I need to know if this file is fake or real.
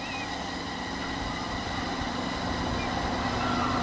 real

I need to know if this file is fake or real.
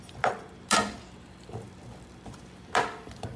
real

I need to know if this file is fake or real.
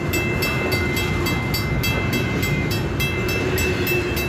real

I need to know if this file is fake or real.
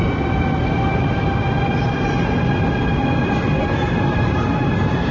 real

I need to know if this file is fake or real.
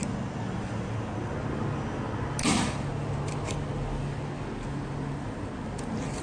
real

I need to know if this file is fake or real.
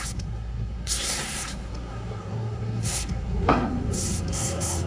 fake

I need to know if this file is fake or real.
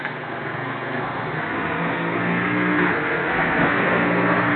fake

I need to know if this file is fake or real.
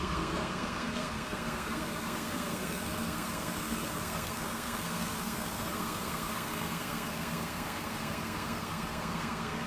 fake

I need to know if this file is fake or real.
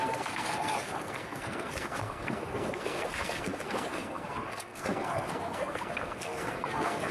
fake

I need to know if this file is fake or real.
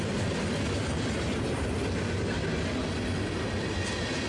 real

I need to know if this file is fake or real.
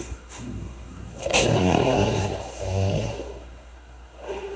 fake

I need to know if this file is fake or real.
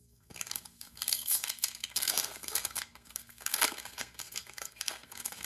fake